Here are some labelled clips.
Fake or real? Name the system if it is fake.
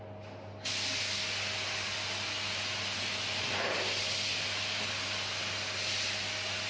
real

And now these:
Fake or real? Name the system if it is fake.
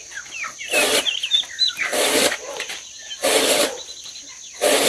real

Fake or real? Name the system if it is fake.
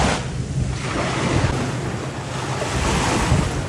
real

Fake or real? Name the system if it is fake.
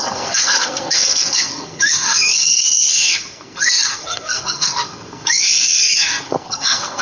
fake, codec, SNAC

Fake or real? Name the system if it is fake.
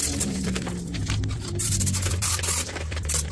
fake, vocoder, BigVGAN v2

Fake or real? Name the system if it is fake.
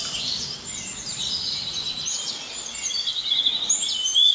real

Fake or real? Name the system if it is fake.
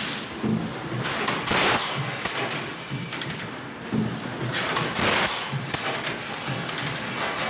real